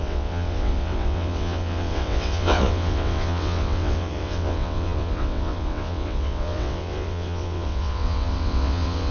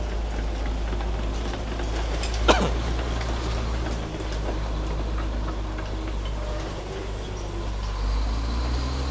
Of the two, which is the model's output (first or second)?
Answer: first